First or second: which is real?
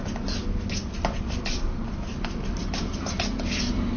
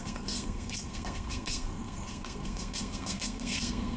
first